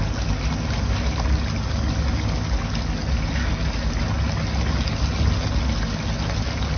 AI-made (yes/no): no